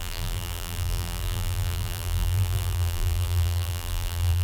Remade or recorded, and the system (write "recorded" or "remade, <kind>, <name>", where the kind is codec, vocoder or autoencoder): remade, vocoder, BigVGAN v2